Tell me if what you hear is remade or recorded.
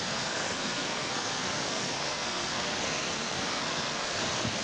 remade